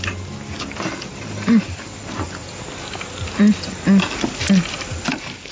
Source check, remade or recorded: recorded